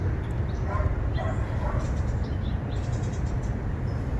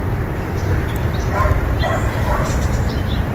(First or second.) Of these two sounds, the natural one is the first